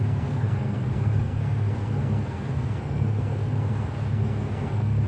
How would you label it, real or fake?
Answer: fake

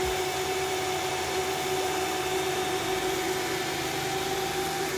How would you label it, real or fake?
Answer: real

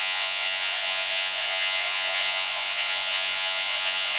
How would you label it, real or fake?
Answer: fake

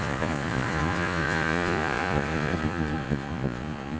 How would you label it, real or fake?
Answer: fake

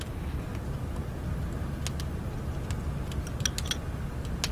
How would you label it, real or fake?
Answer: real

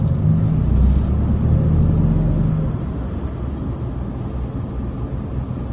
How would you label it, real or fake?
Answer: real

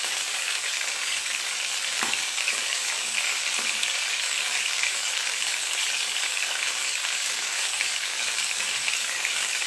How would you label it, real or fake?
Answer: fake